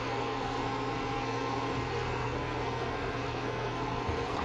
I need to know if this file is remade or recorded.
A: remade